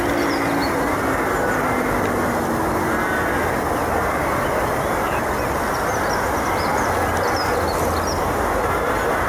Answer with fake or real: real